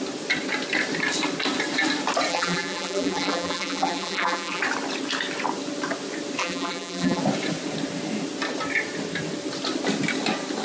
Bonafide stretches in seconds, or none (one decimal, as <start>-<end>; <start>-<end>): 0.0-2.3; 4.6-6.4; 7.2-10.6